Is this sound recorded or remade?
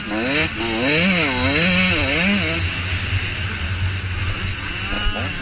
recorded